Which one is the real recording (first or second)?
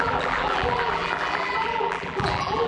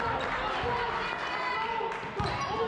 second